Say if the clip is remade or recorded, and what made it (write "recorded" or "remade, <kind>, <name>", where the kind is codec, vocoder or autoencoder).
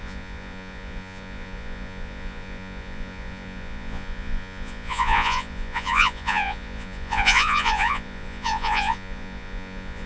remade, vocoder, Vocos